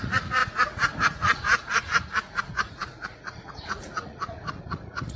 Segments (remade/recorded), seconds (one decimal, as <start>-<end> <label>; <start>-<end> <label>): 0.0-5.2 remade